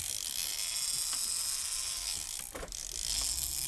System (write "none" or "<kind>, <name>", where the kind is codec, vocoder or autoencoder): none